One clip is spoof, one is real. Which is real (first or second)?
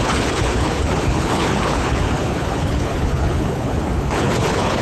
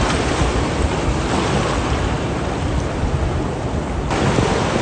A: second